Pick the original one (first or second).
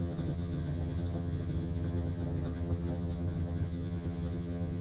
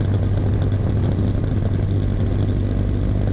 second